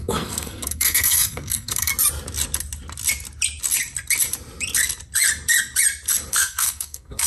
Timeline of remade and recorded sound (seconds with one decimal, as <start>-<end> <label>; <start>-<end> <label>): 0.0-1.9 remade; 1.9-6.3 recorded; 6.3-7.3 remade